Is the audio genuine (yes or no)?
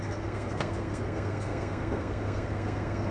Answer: no